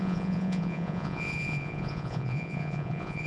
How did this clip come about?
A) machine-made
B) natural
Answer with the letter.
A